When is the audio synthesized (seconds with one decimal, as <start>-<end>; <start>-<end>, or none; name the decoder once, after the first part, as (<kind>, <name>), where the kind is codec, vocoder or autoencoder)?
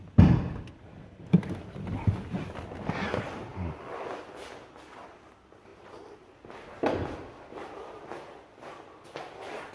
none